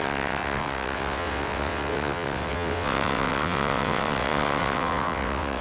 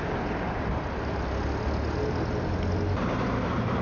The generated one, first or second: first